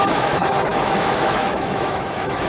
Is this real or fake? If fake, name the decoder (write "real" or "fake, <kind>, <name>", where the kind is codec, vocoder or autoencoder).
fake, autoencoder, DAC-VAE